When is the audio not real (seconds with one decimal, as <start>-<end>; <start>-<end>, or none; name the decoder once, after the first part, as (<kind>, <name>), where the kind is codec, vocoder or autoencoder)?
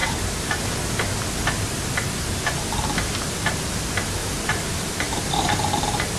0.0-0.6 (vocoder, BigVGAN v2); 4.2-6.2